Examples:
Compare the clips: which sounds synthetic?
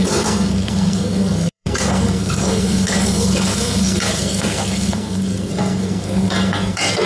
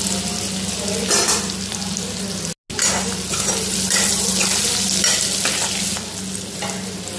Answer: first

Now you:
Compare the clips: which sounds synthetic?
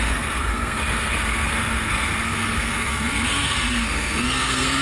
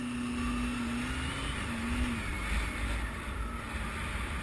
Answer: first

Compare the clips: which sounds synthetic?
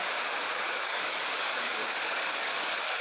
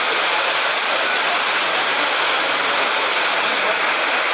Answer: first